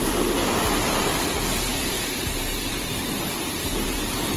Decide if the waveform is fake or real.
fake